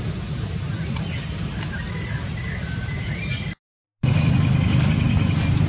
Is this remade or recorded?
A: recorded